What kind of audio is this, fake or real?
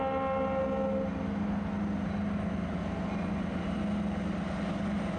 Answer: real